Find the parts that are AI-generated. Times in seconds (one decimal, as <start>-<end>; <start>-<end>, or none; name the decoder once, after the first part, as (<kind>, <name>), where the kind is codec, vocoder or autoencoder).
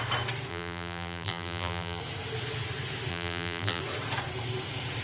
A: 0.5-2.0 (vocoder, BigVGAN v2); 3.1-3.8